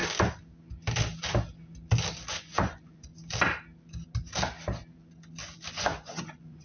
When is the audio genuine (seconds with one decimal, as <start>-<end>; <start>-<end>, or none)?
0.0-2.3; 3.1-5.7